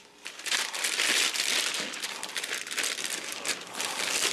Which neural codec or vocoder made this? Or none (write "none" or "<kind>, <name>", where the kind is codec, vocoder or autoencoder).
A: vocoder, BigVGAN v2